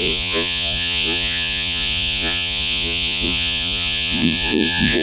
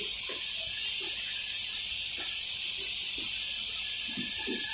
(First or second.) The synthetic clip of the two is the first